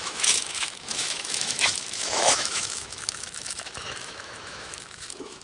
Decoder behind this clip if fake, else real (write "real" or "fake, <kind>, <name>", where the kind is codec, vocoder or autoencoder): fake, autoencoder, DAC-VAE